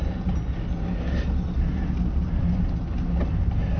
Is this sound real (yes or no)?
yes